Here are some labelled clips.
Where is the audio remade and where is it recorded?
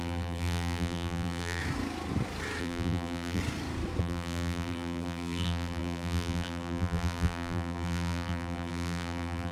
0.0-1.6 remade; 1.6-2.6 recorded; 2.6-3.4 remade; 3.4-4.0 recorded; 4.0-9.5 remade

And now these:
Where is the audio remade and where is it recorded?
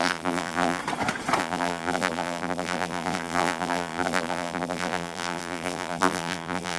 0.0-0.8 remade; 0.8-1.4 recorded; 1.4-6.8 remade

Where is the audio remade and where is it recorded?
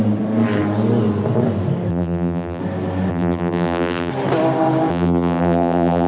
0.0-1.9 recorded; 1.9-2.6 remade; 2.6-3.1 recorded; 3.1-4.1 remade; 4.1-4.9 recorded; 4.9-6.1 remade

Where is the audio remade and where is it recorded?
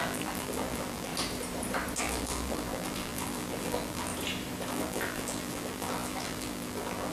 0.0-1.1 remade; 1.1-2.0 recorded; 2.0-4.1 remade; 4.1-4.7 recorded; 4.7-7.1 remade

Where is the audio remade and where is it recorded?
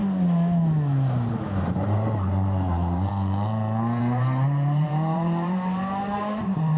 0.0-1.6 recorded; 1.6-3.1 remade; 3.1-4.0 recorded; 4.0-6.8 remade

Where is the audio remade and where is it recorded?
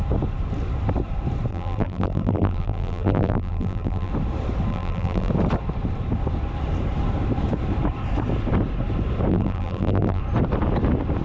0.0-1.5 recorded; 1.5-4.1 remade; 4.1-4.7 recorded; 4.7-5.3 remade; 5.3-9.3 recorded; 9.3-10.2 remade; 10.2-11.2 recorded